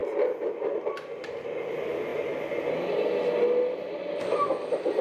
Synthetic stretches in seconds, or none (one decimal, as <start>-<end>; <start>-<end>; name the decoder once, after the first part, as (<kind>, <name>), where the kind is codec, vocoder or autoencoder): 0.0-1.7 (vocoder, BigVGAN v2)

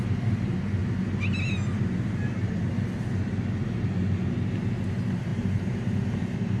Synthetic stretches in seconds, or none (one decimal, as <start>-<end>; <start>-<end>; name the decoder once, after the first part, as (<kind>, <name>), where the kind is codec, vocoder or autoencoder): 5.3-6.6 (vocoder, BigVGAN v2)

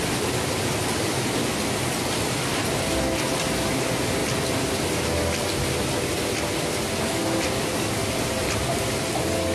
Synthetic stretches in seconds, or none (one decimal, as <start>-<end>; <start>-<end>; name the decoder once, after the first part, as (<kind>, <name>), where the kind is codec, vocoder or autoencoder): 8.0-8.8 (vocoder, BigVGAN v2)

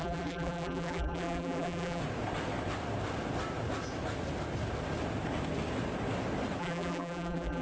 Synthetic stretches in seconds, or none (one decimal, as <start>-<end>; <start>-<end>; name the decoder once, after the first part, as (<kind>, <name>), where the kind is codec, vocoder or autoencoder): 0.0-2.0 (vocoder, BigVGAN v2); 6.6-7.6

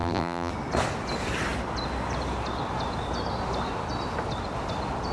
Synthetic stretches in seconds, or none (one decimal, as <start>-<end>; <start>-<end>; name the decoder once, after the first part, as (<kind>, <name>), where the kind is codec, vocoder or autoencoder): 0.0-0.5 (vocoder, BigVGAN v2)

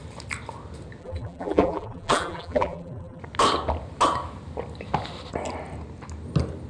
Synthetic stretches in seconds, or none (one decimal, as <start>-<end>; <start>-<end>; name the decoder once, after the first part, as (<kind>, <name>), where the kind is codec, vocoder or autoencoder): 1.0-3.2 (vocoder, BigVGAN v2)

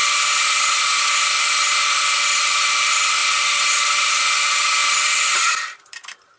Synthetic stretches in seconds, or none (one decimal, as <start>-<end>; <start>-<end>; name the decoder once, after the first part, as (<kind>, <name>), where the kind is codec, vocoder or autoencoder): 0.0-3.2 (vocoder, BigVGAN v2); 4.1-6.4

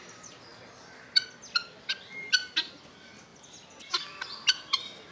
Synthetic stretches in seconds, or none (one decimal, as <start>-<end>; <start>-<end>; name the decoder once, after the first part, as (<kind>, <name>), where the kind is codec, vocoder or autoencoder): none